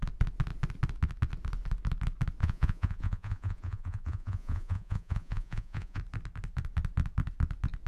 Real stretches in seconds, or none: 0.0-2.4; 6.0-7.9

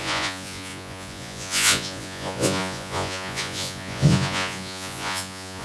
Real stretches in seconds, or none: none